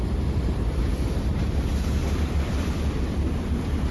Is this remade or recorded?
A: remade